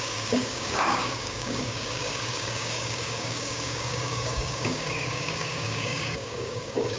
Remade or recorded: remade